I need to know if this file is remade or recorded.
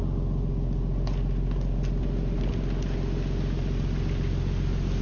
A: recorded